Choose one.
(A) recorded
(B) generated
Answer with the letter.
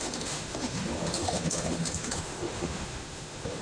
B